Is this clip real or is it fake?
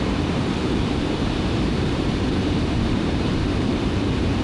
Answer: fake